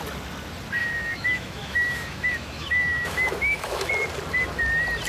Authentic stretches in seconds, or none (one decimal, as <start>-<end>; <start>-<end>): 0.0-0.8; 3.9-5.1